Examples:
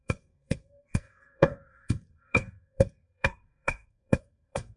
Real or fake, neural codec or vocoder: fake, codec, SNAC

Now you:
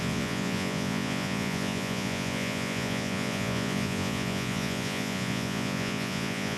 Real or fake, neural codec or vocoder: fake, vocoder, Vocos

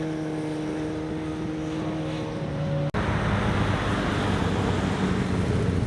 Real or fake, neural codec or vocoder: real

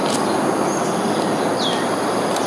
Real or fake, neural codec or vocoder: real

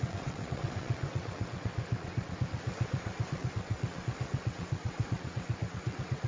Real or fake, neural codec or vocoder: fake, vocoder, WaveNeXt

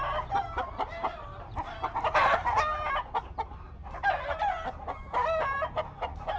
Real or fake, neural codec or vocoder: real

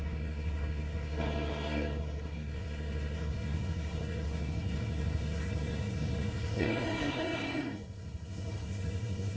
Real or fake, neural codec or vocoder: fake, codec, SNAC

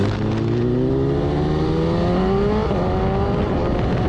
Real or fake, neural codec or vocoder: real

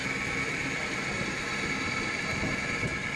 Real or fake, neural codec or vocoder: real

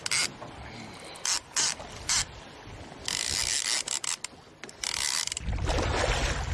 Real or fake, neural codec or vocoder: real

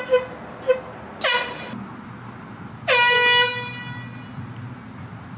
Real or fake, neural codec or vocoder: real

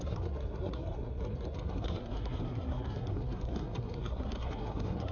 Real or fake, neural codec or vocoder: fake, codec, SNAC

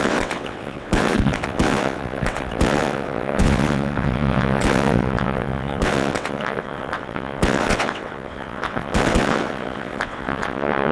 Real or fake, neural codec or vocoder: fake, vocoder, WaveNeXt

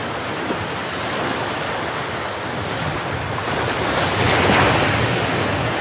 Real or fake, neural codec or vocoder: real